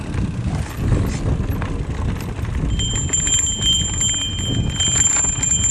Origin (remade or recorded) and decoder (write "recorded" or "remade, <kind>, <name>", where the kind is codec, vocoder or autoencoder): recorded